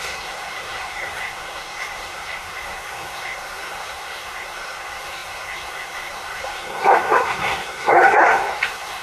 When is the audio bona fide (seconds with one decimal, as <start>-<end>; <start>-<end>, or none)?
none